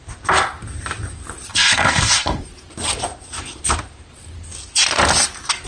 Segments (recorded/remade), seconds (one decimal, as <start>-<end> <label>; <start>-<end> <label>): 0.0-1.5 recorded; 1.5-2.4 remade; 2.4-5.7 recorded

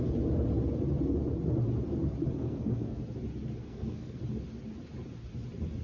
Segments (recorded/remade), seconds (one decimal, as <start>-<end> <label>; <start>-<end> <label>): 0.0-2.4 recorded; 2.4-3.0 remade; 3.0-3.6 recorded; 3.6-4.2 remade; 4.2-5.8 recorded

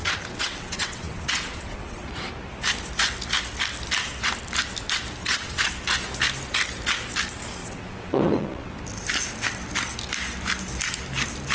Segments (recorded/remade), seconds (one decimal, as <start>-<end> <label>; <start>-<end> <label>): 0.0-2.3 remade; 2.3-5.2 recorded; 5.2-5.7 remade; 5.7-7.6 recorded; 7.6-8.7 remade; 8.7-11.5 recorded